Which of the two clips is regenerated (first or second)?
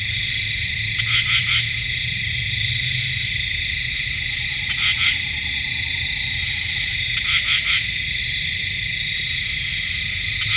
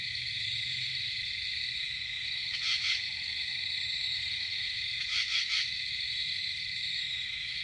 second